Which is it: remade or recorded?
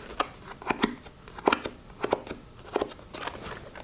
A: recorded